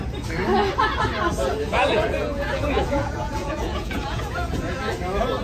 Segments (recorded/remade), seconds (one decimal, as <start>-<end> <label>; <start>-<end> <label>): 0.0-1.7 recorded; 1.7-4.9 remade; 4.9-5.4 recorded